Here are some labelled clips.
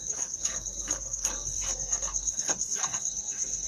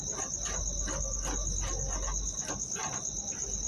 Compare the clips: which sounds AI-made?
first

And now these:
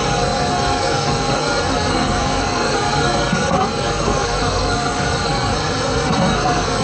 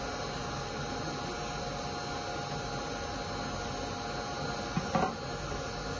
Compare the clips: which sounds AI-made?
first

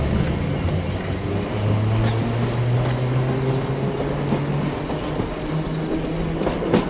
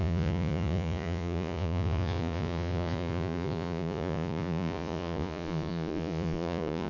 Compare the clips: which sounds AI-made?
second